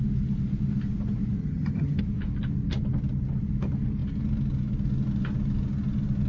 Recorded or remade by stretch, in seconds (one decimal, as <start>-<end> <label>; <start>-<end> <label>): 0.0-1.4 recorded; 1.4-2.0 remade; 2.0-6.3 recorded